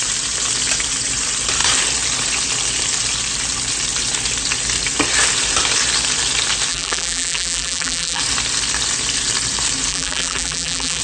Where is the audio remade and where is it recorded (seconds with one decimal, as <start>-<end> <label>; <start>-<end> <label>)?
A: 0.0-6.7 recorded; 6.7-8.2 remade; 8.2-9.9 recorded; 9.9-11.0 remade